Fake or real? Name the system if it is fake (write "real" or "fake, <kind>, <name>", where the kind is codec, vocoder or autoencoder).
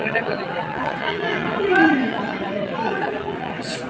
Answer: fake, vocoder, WaveNeXt